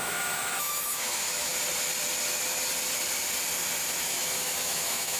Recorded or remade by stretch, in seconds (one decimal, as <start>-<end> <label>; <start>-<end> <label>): 0.0-1.5 remade; 1.5-4.0 recorded; 4.0-5.2 remade